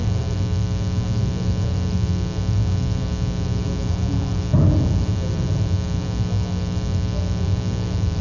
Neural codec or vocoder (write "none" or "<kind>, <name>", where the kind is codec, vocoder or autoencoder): none